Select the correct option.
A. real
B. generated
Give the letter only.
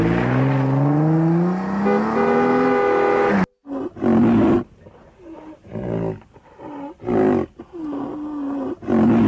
A